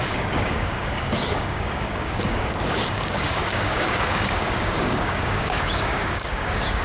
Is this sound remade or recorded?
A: remade